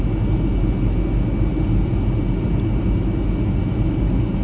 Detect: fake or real real